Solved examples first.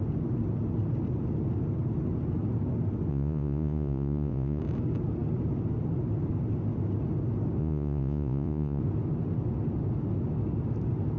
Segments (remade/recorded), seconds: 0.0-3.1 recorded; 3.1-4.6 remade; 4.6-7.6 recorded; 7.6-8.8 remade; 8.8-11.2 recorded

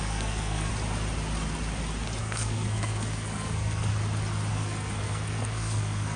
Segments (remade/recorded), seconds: 0.0-0.7 remade; 0.7-2.2 recorded; 2.2-3.9 remade; 3.9-4.5 recorded; 4.5-6.2 remade

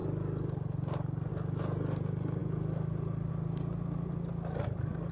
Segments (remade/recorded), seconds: 0.0-5.1 recorded

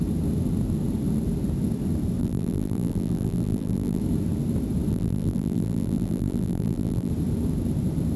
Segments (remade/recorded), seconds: 0.0-2.2 recorded; 2.2-4.0 remade; 4.0-4.9 recorded; 4.9-7.1 remade; 7.1-8.2 recorded

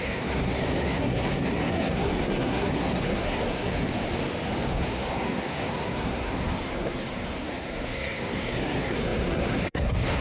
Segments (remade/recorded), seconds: 0.0-3.9 remade; 3.9-4.7 recorded; 4.7-10.2 remade

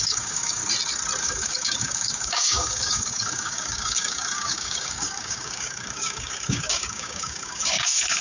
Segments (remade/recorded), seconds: 0.0-0.6 remade; 0.6-1.2 recorded; 1.2-8.2 remade

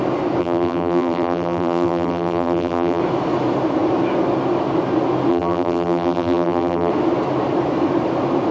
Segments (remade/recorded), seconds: 0.0-0.4 recorded; 0.4-3.0 remade; 3.0-5.3 recorded; 5.3-6.9 remade; 6.9-8.5 recorded

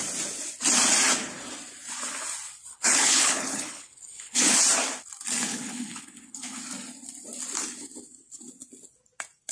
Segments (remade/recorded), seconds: 0.0-2.7 recorded; 2.7-4.6 remade; 4.6-5.5 recorded; 5.5-6.6 remade; 6.6-9.5 recorded